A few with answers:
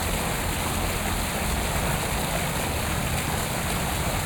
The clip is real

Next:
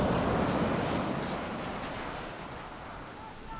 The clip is real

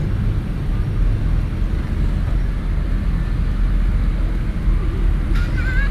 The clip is real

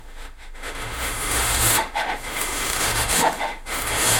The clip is fake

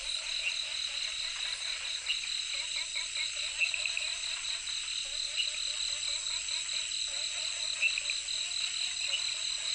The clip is real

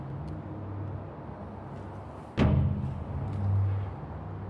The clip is real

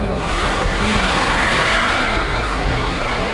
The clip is fake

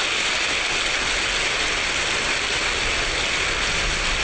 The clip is real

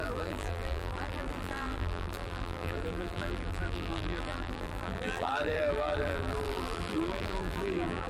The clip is fake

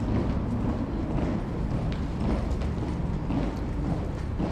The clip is real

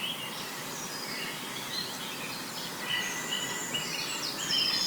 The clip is real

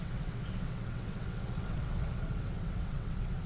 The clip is fake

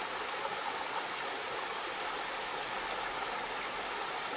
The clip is real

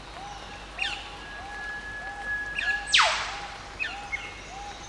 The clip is real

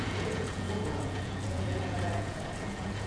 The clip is fake